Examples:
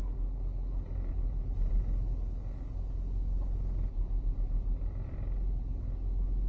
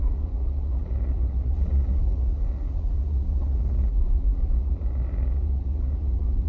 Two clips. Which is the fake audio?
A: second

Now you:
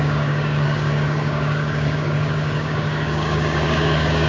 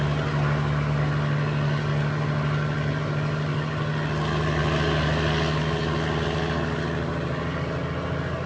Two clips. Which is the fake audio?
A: first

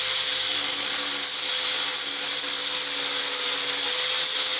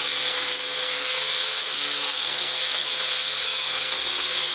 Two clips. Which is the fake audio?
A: second